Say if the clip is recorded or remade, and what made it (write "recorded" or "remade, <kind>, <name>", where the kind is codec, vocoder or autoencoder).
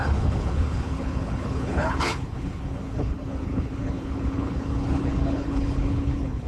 remade, codec, HILCodec